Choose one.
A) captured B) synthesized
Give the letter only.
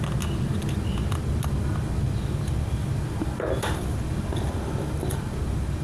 A